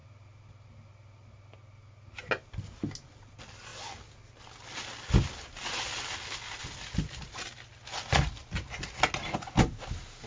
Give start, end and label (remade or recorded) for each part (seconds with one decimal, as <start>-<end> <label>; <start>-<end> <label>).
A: 0.0-10.3 recorded